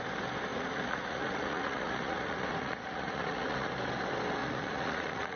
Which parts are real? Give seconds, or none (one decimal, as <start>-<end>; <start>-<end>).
0.0-0.5; 3.7-4.4